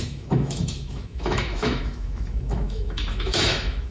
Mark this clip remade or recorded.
remade